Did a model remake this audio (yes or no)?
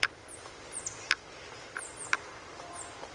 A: no